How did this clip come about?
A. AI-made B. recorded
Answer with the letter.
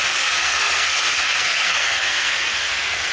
A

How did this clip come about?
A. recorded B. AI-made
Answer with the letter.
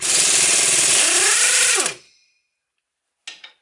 A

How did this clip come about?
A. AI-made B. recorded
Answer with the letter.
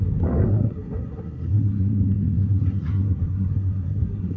A